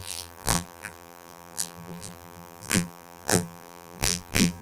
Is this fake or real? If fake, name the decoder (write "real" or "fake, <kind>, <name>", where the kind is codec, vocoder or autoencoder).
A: fake, vocoder, BigVGAN v2